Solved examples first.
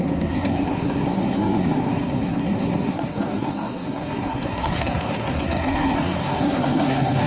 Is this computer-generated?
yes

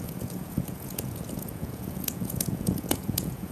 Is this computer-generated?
yes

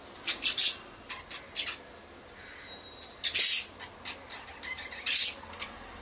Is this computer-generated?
no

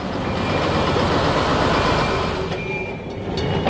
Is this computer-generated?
no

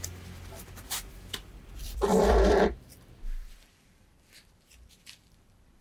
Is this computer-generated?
yes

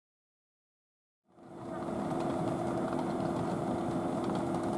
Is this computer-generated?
no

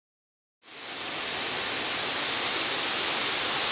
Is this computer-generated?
no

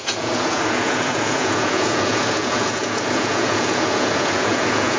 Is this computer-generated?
yes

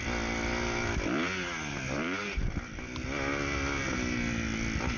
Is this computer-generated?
no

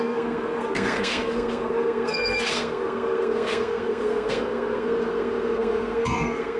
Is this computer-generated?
yes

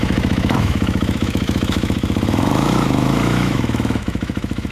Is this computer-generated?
yes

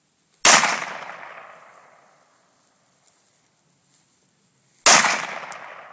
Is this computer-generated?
no